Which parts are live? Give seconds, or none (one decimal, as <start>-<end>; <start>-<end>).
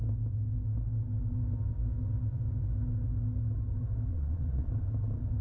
0.0-4.1; 4.7-5.4